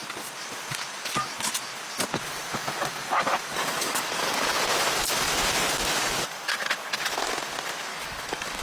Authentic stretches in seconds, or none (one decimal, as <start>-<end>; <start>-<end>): 0.0-3.5; 4.6-7.9